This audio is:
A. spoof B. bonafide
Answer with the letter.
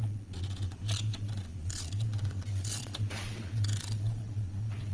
A